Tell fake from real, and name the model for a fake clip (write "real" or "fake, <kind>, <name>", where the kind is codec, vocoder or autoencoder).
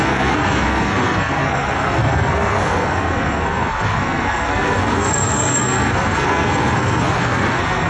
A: fake, codec, SNAC